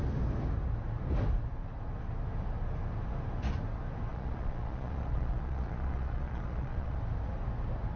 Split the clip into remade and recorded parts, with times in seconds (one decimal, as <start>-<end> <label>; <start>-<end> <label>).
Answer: 0.0-4.1 recorded; 4.1-7.0 remade; 7.0-8.0 recorded